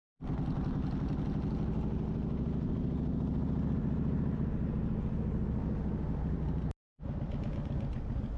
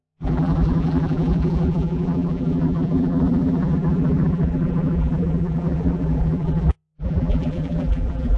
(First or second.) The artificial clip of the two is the second